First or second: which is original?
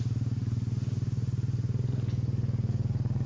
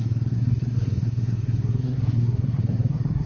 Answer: first